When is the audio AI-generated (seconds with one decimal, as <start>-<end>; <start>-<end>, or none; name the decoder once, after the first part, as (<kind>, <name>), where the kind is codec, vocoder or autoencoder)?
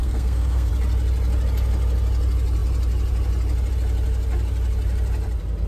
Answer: 0.0-0.7 (codec, SNAC)